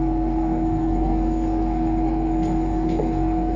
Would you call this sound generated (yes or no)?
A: yes